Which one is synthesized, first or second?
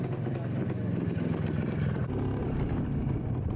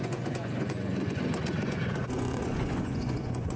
second